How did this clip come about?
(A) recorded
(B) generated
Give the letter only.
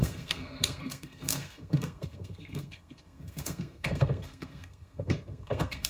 B